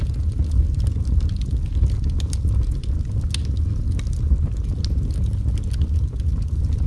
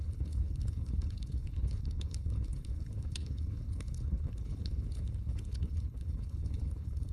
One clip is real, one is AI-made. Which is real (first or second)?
first